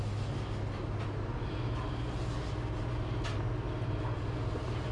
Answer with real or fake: real